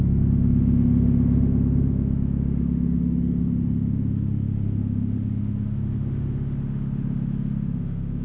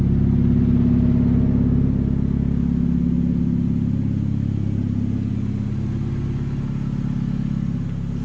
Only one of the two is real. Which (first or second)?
second